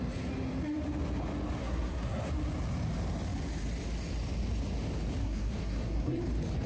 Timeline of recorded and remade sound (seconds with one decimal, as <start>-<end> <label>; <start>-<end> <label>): 0.0-1.6 recorded; 1.6-2.3 remade; 2.3-5.2 recorded; 5.2-6.2 remade; 6.2-6.7 recorded